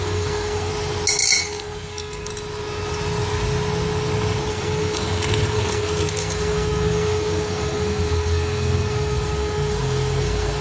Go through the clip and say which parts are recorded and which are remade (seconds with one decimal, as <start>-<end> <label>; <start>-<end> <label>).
0.0-0.7 remade; 0.7-1.4 recorded; 1.4-2.3 remade; 2.3-4.5 recorded; 4.5-10.6 remade